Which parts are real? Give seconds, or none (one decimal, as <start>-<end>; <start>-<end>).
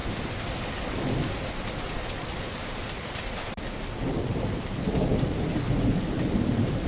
0.0-4.1; 5.1-6.5